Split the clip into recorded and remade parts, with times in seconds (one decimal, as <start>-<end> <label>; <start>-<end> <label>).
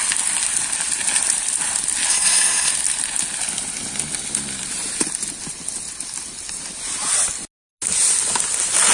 0.0-2.1 recorded; 2.1-2.7 remade; 2.7-8.9 recorded